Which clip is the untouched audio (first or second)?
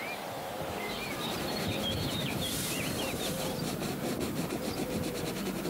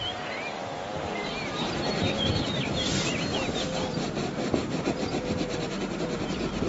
second